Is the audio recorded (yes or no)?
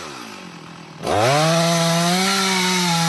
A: yes